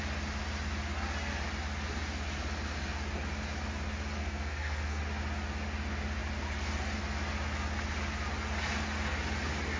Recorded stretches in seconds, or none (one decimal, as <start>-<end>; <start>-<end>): 0.0-4.2; 5.0-9.8